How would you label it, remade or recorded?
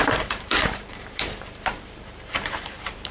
remade